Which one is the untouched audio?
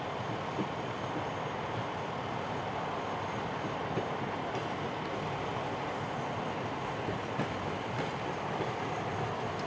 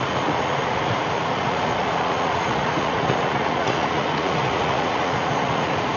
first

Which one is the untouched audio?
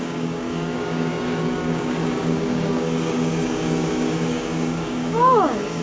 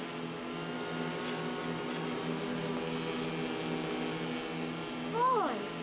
second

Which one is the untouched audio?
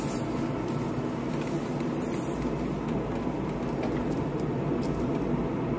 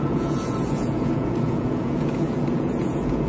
first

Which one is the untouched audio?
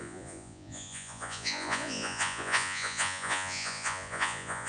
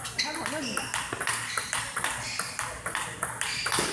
second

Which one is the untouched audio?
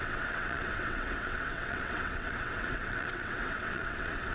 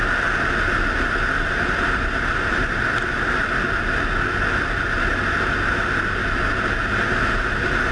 second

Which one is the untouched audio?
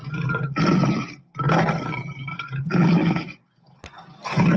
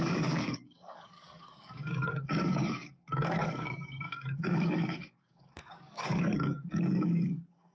first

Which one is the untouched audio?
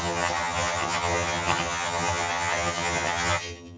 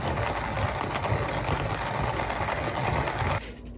second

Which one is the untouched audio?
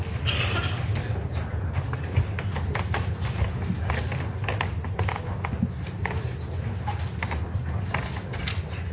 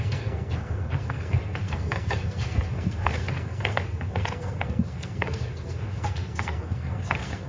first